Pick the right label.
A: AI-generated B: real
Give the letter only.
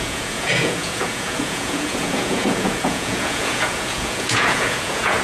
A